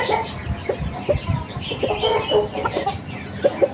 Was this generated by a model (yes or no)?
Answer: no